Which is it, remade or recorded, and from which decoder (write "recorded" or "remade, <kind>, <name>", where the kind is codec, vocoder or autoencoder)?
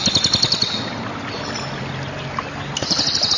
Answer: recorded